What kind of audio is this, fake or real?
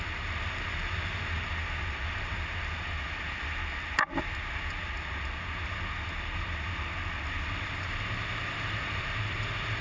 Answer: real